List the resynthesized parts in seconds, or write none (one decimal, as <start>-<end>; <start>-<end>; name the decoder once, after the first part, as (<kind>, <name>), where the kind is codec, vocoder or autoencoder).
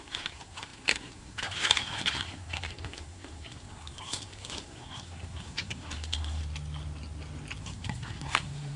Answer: 0.0-6.4 (codec, SNAC); 7.6-8.8